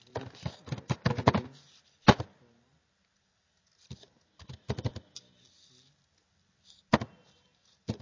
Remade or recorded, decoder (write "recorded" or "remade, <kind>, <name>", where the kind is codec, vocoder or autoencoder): recorded